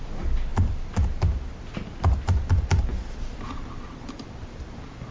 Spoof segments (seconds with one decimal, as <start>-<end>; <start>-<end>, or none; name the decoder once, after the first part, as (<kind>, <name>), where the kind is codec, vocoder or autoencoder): none